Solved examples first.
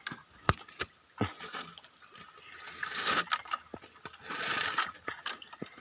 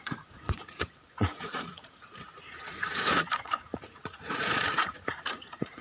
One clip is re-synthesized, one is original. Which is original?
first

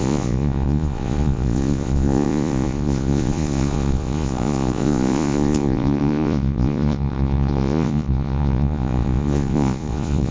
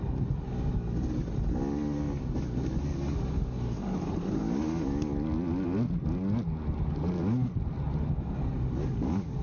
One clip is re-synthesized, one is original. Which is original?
second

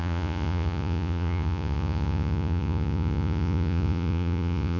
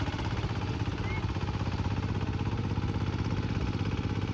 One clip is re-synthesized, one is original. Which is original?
second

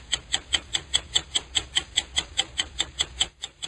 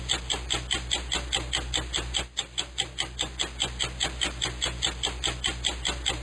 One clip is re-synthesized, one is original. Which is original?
second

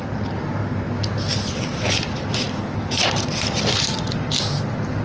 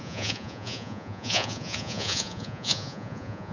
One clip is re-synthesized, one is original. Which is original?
first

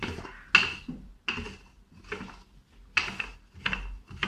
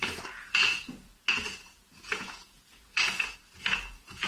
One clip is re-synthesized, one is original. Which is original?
first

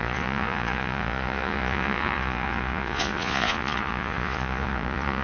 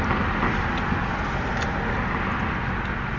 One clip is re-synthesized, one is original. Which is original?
second